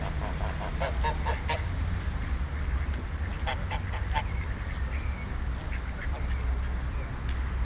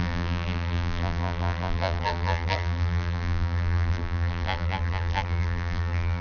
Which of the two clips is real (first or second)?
first